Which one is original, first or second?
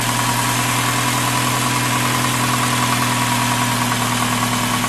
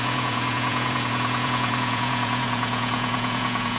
first